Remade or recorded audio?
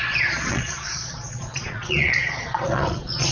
remade